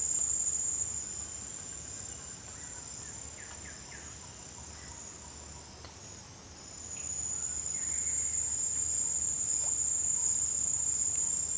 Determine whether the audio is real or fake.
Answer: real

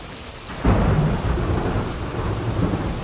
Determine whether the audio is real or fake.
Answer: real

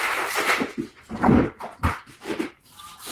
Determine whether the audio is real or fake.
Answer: fake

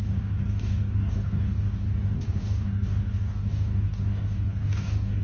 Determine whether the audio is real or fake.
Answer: fake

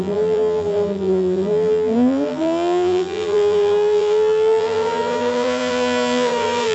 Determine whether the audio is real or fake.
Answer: fake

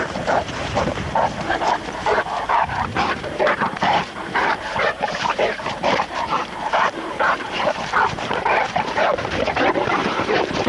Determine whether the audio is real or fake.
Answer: fake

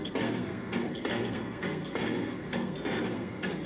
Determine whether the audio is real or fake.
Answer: fake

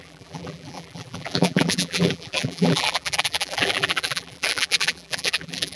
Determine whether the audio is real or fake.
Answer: fake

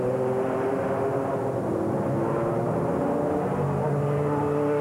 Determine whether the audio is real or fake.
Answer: real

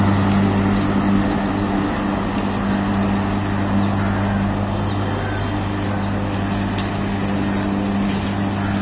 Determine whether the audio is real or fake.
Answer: real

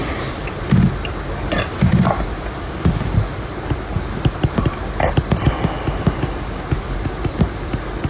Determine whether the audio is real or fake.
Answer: real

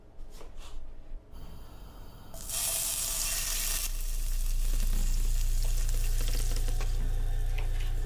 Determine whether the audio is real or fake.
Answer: real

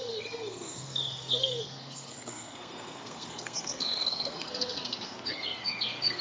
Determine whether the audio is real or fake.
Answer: fake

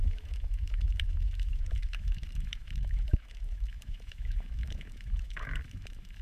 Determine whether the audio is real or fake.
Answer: fake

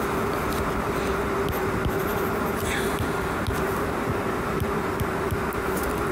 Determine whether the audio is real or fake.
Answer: real